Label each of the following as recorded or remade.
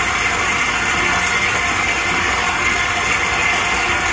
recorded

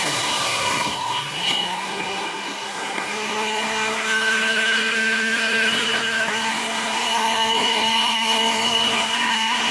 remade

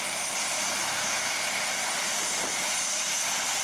remade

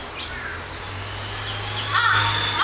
recorded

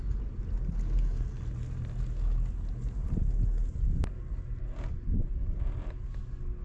recorded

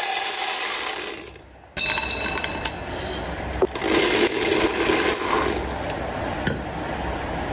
recorded